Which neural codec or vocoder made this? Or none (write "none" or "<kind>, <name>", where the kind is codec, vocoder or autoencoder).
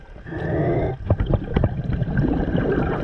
none